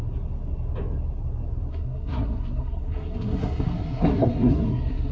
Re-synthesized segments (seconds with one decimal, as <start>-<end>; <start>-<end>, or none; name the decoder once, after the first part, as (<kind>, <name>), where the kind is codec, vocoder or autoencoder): 1.7-5.1 (codec, SNAC)